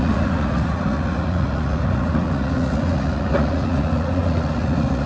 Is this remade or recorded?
remade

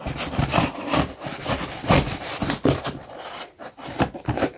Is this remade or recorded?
recorded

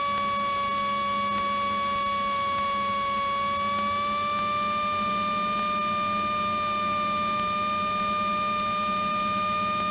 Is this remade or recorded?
recorded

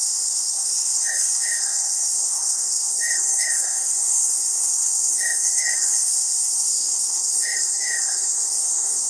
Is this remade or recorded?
remade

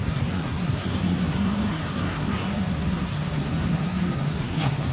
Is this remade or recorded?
remade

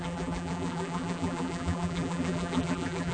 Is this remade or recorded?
remade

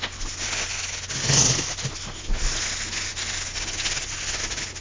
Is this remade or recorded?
recorded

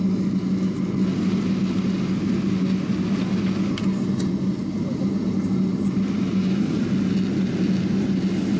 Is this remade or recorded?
recorded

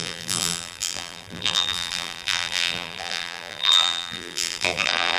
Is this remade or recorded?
remade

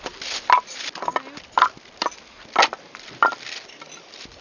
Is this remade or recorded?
recorded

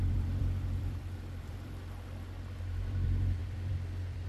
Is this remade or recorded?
remade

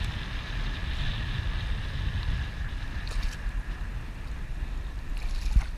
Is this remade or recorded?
recorded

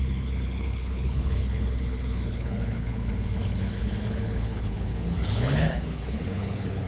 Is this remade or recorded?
remade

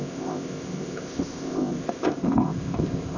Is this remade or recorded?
remade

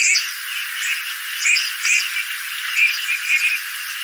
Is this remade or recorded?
recorded